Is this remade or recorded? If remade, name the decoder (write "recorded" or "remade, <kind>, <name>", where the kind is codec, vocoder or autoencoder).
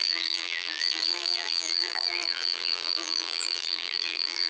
remade, vocoder, BigVGAN v2